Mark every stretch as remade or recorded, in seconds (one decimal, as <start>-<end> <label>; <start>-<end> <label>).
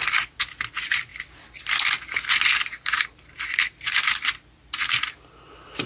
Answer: 0.0-5.9 recorded